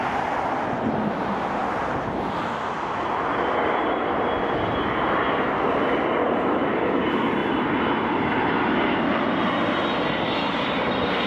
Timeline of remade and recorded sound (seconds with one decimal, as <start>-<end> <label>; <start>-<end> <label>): 0.0-11.3 recorded